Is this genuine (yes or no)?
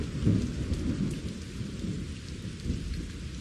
yes